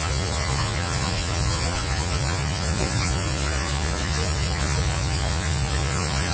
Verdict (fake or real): fake